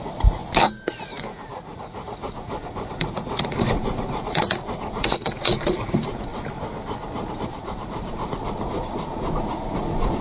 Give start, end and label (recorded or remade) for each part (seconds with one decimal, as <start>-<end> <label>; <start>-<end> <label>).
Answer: 0.0-0.4 remade; 0.4-1.0 recorded; 1.0-6.3 remade; 6.3-7.4 recorded; 7.4-10.2 remade